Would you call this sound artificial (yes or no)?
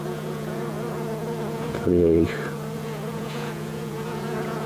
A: yes